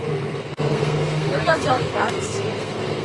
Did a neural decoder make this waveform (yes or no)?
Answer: yes